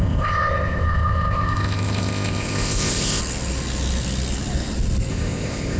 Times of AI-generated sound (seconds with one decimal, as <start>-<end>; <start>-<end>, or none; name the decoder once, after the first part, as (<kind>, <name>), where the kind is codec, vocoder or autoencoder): 0.0-3.2 (codec, ZipCodec); 5.1-5.8